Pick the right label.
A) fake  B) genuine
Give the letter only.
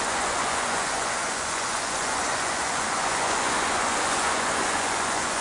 A